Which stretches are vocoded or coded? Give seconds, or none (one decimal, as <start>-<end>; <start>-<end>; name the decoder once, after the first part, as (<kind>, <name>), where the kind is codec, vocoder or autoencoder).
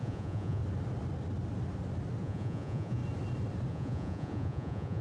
0.0-0.6 (vocoder, Vocos); 2.2-3.0; 3.7-5.0